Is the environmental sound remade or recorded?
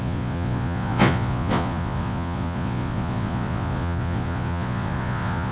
remade